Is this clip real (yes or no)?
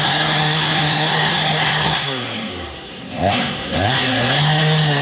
no